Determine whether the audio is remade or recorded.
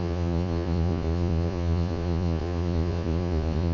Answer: remade